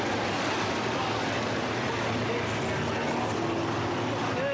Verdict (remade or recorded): recorded